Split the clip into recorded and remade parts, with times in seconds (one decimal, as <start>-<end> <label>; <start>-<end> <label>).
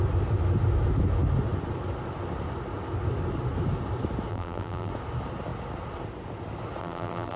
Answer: 0.0-4.3 recorded; 4.3-4.9 remade; 4.9-6.8 recorded; 6.8-7.4 remade